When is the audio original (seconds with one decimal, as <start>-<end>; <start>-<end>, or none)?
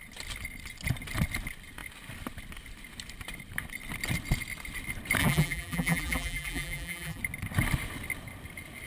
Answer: 0.0-5.2; 7.2-8.9